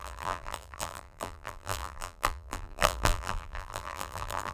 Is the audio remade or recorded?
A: remade